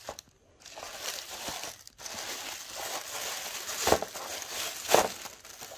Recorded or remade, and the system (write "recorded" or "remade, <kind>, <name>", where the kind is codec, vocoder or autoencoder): recorded